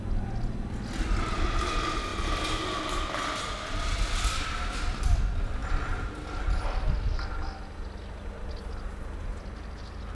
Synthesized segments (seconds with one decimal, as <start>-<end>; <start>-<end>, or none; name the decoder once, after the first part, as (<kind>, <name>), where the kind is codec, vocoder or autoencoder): none

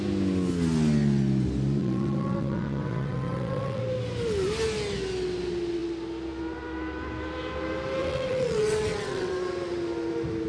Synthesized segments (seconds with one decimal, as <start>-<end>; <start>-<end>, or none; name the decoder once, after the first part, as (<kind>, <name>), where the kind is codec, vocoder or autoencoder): 1.8-3.8 (vocoder, WaveNeXt); 8.0-9.3

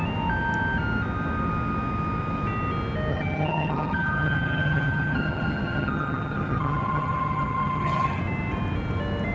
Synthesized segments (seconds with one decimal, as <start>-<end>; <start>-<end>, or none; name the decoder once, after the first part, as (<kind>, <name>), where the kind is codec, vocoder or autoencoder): 3.1-8.2 (vocoder, HiFi-GAN)